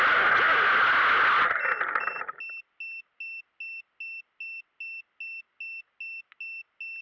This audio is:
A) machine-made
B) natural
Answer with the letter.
B